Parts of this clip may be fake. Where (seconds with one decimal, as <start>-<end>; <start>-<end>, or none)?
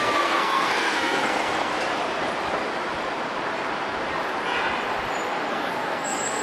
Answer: 0.0-1.7; 5.5-6.4